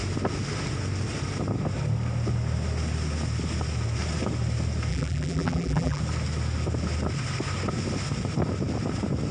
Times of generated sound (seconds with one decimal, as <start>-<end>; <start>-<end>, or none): 4.9-6.0